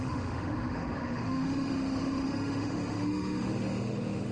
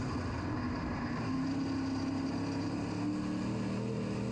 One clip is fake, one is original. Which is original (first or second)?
second